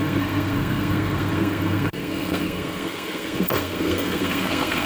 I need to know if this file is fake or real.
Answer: fake